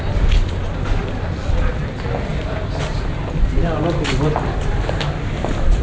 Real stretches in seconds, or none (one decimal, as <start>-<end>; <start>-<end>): 0.0-5.8